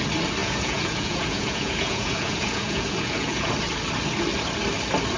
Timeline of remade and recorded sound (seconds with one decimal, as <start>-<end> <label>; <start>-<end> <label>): 0.0-0.4 recorded; 0.4-3.5 remade; 3.5-5.2 recorded